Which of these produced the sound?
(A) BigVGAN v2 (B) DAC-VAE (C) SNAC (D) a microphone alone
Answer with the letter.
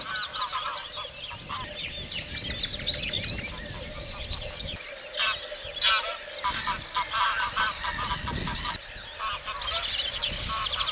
D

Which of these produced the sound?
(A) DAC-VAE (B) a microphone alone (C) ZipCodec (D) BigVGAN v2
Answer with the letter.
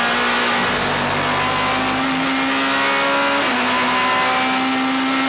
B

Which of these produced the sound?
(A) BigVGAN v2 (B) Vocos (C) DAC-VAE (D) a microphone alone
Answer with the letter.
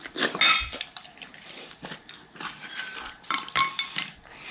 D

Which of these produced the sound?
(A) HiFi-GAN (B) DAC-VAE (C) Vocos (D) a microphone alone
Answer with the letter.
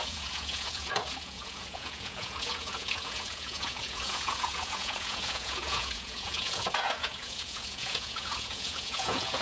C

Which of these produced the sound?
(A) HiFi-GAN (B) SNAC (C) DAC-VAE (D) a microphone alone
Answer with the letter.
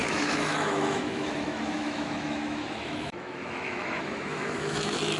C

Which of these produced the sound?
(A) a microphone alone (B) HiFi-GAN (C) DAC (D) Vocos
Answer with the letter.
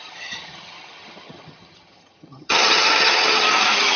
B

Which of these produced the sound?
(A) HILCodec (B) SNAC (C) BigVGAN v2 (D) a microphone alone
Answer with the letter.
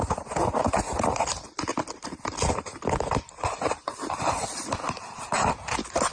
D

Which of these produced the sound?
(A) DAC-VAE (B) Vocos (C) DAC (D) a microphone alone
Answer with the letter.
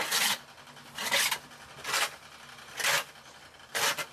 D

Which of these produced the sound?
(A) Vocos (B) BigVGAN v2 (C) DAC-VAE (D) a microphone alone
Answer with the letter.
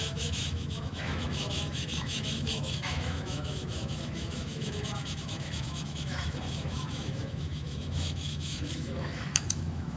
C